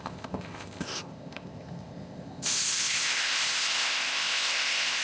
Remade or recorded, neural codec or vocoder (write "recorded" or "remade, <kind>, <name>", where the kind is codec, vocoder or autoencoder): remade, codec, ZipCodec